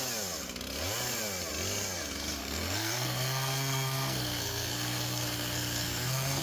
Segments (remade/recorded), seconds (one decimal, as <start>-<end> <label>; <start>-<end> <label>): 0.0-2.4 recorded; 2.4-6.4 remade